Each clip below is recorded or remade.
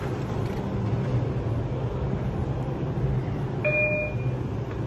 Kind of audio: recorded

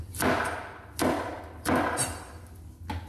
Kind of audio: recorded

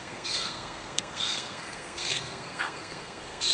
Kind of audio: remade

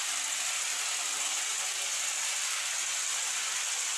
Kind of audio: recorded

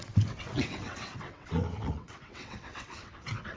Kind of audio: remade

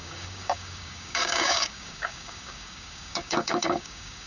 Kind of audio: remade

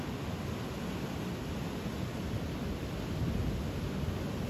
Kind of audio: recorded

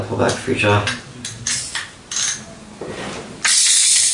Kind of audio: recorded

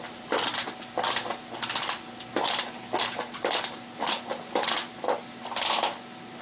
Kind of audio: recorded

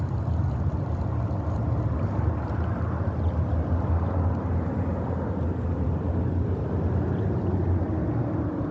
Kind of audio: recorded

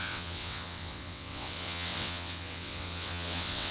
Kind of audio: remade